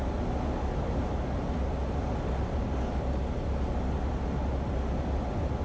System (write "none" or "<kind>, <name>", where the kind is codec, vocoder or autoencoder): none